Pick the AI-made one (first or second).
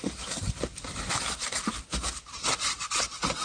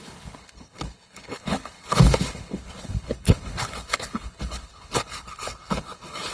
second